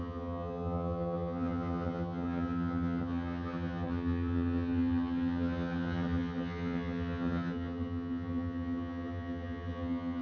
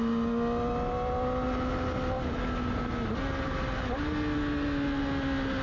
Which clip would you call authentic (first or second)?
second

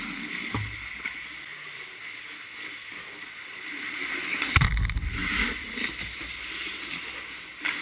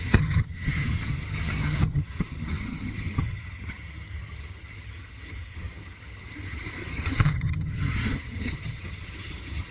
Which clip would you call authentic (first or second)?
first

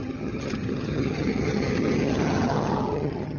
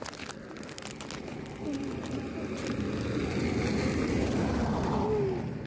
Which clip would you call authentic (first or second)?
second